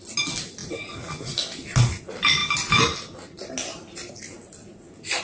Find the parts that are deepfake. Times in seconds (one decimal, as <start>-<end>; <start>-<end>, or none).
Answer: none